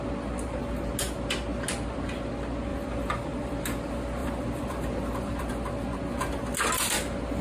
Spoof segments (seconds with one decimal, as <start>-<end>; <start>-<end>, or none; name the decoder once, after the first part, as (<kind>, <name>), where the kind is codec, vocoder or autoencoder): 2.7-3.6 (vocoder, BigVGAN v2); 4.2-5.5